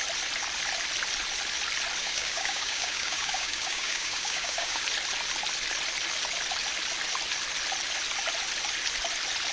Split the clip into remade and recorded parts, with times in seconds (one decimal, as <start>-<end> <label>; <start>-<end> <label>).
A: 0.0-2.0 recorded; 2.0-4.8 remade; 4.8-9.5 recorded